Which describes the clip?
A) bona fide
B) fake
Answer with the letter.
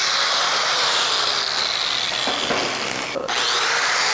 A